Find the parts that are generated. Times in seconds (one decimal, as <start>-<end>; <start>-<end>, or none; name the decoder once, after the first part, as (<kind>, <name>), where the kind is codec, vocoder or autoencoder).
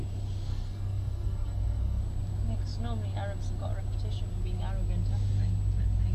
0.5-2.0 (codec, SNAC)